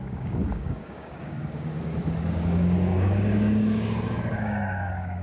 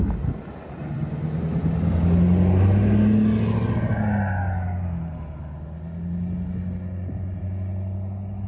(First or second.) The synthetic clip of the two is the first